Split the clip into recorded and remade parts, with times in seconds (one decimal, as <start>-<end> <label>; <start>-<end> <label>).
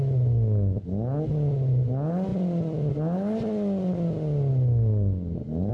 0.0-5.7 recorded